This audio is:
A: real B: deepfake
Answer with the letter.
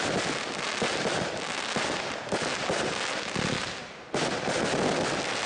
A